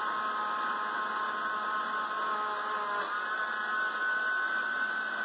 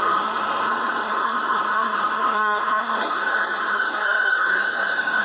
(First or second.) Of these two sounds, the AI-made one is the second